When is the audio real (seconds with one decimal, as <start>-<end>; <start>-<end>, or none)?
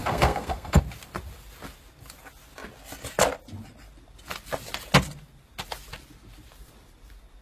0.8-7.4